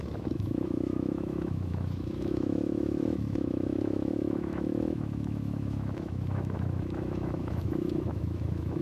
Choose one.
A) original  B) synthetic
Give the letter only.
B